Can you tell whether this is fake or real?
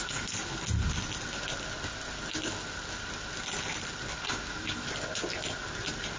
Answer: real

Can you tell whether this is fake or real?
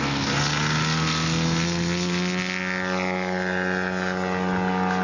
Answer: real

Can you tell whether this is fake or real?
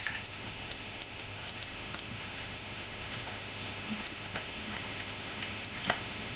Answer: fake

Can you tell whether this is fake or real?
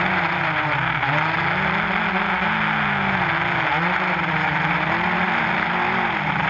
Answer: real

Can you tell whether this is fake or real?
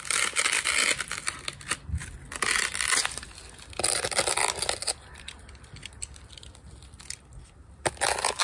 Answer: real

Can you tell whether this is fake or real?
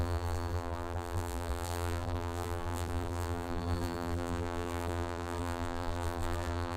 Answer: fake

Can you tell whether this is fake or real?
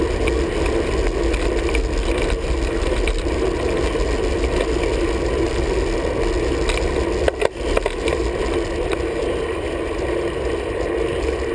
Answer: real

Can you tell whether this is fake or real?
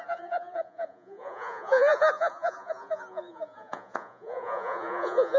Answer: fake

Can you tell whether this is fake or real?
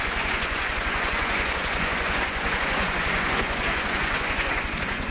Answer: fake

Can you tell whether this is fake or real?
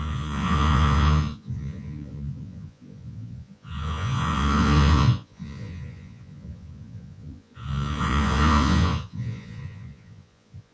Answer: fake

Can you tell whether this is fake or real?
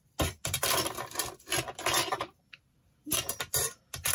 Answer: fake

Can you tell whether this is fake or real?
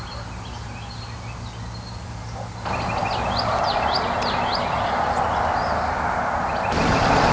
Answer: real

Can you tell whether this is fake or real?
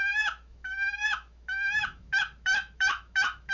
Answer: fake